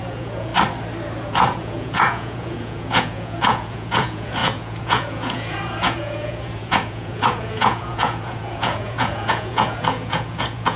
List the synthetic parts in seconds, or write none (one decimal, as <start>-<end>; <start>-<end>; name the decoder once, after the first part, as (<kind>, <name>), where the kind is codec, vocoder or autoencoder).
0.0-0.5 (vocoder, Vocos); 1.2-10.8